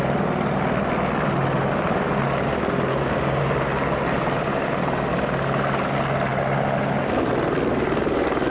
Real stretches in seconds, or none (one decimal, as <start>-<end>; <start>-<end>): 0.0-2.9; 3.4-8.5